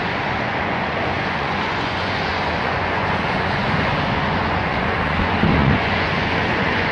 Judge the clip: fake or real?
fake